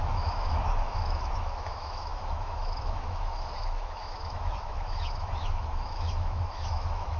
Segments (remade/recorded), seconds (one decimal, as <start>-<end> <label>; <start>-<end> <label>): 0.0-7.2 remade

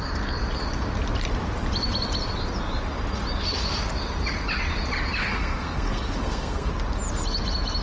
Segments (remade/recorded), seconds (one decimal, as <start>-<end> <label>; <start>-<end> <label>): 0.0-5.2 recorded; 5.2-6.7 remade; 6.7-7.8 recorded

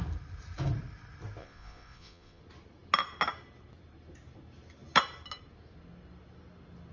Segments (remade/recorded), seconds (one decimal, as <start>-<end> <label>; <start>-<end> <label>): 0.0-1.4 recorded; 1.4-2.4 remade; 2.4-6.9 recorded